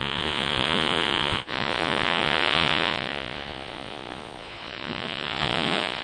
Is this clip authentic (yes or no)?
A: no